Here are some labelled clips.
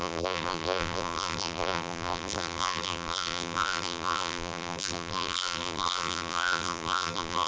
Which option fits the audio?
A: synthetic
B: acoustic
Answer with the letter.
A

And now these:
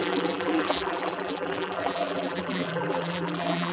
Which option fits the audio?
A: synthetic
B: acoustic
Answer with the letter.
A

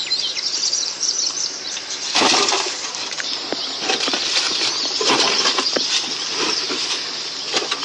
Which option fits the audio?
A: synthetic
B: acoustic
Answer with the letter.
A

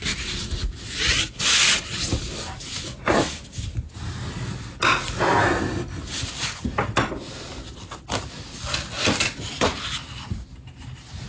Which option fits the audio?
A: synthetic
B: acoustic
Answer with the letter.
B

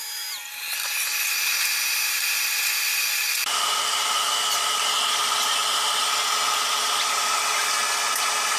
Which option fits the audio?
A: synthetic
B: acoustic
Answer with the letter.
B